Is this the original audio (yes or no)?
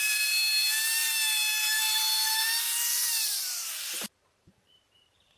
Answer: no